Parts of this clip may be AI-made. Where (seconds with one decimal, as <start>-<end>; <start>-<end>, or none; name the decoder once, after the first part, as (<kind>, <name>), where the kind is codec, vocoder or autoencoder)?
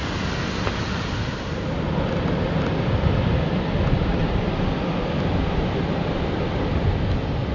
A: none